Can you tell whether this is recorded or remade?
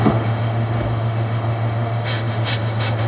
remade